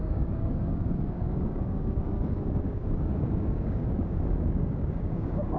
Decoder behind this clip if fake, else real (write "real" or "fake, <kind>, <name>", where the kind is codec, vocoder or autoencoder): fake, codec, DAC